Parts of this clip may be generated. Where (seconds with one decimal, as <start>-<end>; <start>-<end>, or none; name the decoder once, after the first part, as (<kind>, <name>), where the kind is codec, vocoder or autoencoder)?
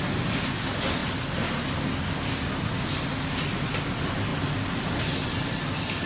none